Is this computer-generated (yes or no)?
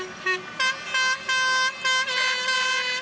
no